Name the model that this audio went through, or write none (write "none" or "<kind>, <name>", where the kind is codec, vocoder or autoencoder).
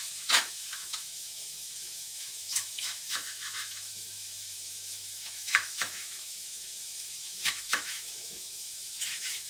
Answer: autoencoder, DAC-VAE